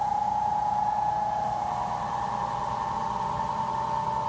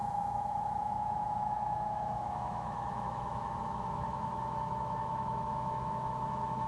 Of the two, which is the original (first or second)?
first